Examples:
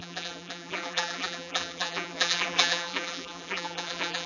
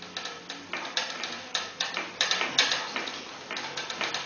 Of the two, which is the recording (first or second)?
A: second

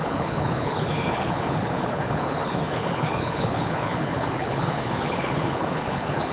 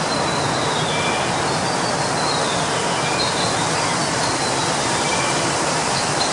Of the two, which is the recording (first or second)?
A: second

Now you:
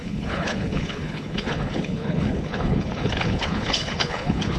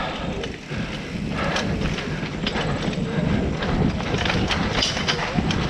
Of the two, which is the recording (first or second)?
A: second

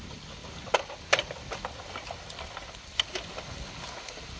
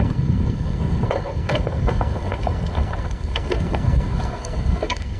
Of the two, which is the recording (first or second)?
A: first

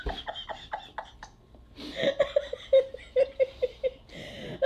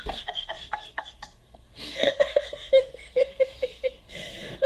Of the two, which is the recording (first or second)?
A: first